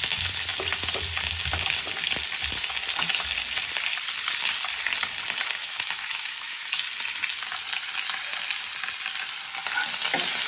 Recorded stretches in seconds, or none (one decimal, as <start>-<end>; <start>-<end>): 0.0-5.6; 6.7-10.5